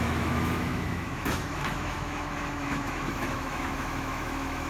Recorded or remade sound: remade